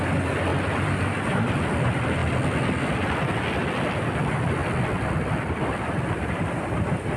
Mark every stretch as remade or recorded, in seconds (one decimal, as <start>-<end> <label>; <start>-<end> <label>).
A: 0.0-2.2 remade; 2.2-3.9 recorded; 3.9-4.6 remade; 4.6-5.4 recorded; 5.4-7.2 remade